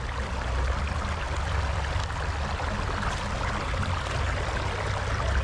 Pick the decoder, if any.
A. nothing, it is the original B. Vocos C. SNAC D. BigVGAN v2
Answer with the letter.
A